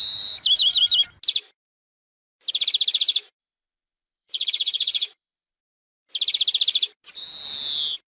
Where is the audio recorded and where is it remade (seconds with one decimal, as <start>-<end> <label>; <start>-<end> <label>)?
0.0-3.4 recorded; 3.4-5.6 remade; 5.6-8.1 recorded